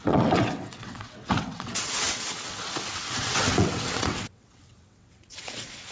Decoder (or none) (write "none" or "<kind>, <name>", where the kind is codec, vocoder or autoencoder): vocoder, WaveNeXt